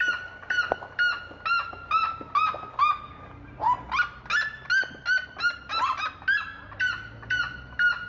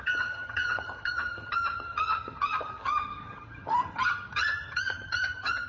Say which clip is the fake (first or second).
second